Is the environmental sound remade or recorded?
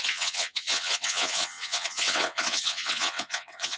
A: remade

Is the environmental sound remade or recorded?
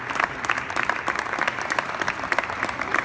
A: recorded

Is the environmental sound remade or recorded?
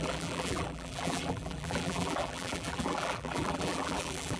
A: remade